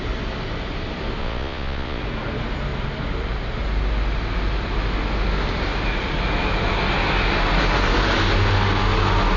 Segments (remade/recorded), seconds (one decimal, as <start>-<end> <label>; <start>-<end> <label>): 0.0-1.2 recorded; 1.2-2.0 remade; 2.0-9.4 recorded